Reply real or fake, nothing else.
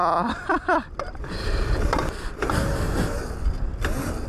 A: real